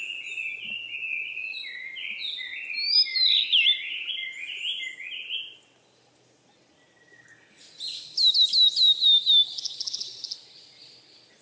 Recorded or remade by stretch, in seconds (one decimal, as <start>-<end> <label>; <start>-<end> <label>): 0.0-3.1 recorded; 3.1-4.1 remade; 4.1-11.4 recorded